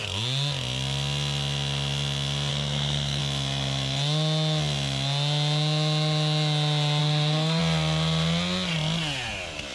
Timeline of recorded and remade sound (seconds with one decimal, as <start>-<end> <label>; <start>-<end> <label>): 0.0-2.5 recorded; 2.5-3.2 remade; 3.2-7.0 recorded; 7.0-7.6 remade; 7.6-9.7 recorded